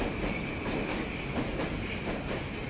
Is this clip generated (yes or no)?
no